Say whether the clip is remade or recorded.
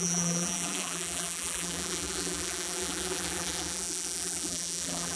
remade